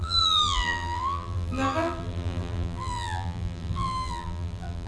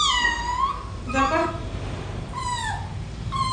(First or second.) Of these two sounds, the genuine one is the second